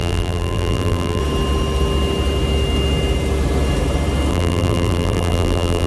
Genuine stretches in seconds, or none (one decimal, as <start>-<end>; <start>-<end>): 1.2-4.3